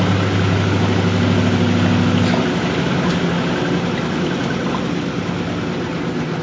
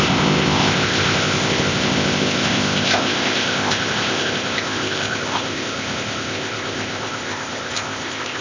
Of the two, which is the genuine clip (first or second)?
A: first